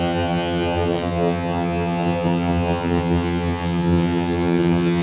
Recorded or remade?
remade